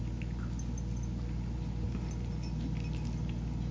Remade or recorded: recorded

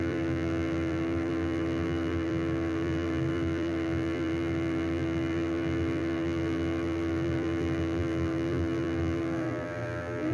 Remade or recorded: remade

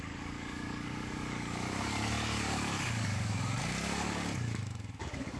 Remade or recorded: remade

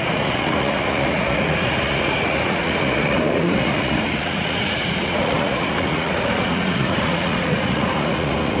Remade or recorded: remade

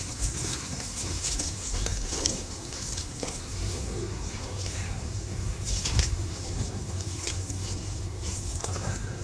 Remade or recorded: remade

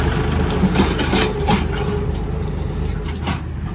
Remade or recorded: recorded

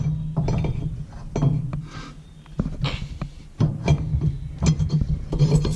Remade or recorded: recorded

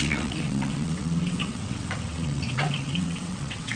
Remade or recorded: remade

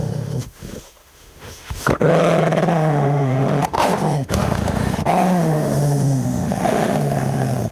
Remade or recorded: remade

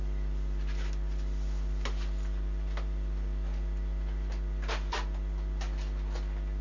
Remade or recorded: recorded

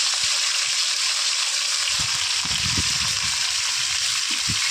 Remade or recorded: recorded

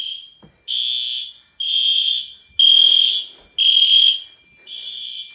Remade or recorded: recorded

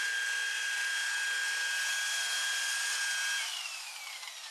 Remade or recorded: recorded